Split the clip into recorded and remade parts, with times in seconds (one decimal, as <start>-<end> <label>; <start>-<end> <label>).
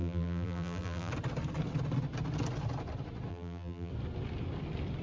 0.0-1.1 remade; 1.1-3.3 recorded; 3.3-3.9 remade; 3.9-5.0 recorded